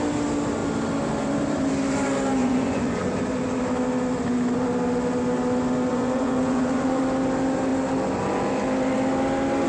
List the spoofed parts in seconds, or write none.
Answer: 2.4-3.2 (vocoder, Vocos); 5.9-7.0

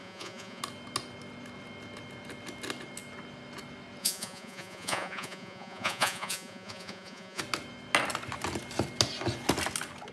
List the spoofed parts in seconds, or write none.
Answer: 0.0-0.6 (vocoder, Vocos); 4.0-7.4

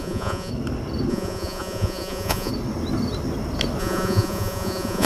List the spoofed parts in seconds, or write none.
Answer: 0.0-0.5 (vocoder, Vocos); 1.1-2.5; 3.8-5.1

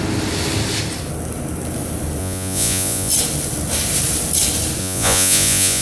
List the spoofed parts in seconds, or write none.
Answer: 2.2-3.1 (vocoder, Vocos); 4.8-5.8

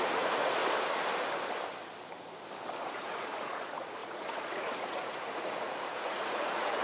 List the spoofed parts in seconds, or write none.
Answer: 0.0-0.6 (vocoder, Vocos); 2.8-6.8